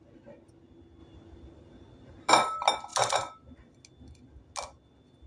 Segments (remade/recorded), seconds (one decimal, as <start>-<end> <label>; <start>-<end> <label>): 0.0-1.0 recorded; 1.0-2.3 remade; 2.3-2.9 recorded; 2.9-3.5 remade; 3.5-5.3 recorded